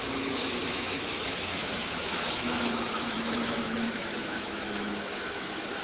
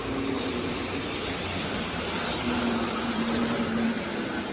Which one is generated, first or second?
first